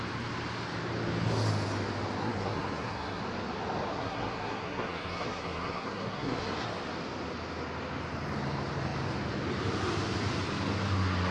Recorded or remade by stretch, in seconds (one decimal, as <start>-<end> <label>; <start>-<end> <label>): 0.0-2.2 recorded; 2.2-3.2 remade; 3.2-3.9 recorded; 3.9-6.7 remade; 6.7-11.3 recorded